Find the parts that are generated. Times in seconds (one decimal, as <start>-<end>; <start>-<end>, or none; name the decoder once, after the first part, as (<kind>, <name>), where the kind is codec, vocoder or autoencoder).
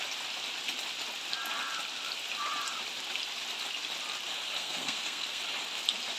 4.6-5.4 (codec, SNAC)